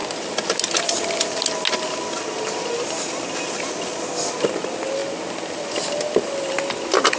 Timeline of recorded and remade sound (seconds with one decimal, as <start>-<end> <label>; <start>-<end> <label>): 0.0-7.2 recorded